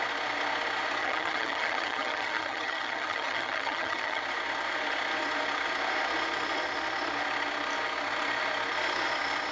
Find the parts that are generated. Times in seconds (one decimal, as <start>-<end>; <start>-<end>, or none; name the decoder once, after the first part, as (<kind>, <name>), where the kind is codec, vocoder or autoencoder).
1.0-4.2 (vocoder, HiFi-GAN)